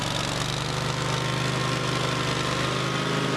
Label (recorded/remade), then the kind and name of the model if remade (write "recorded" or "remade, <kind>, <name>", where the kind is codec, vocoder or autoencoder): recorded